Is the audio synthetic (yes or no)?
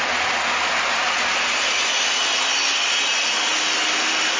no